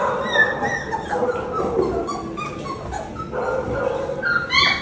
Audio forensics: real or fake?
real